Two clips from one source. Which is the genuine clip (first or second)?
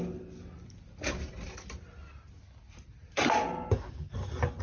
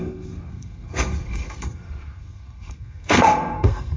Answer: first